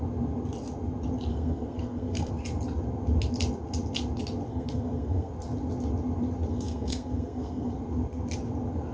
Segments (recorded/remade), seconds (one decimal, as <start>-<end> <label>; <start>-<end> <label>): 0.0-1.3 recorded; 1.3-2.3 remade; 2.3-4.5 recorded; 4.5-5.3 remade; 5.3-6.5 recorded; 6.5-7.8 remade; 7.8-8.9 recorded